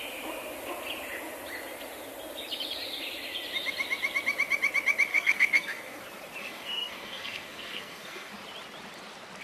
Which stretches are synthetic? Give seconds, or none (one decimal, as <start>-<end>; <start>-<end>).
5.1-6.0; 6.4-8.3